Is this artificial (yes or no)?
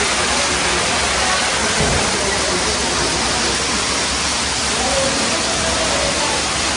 no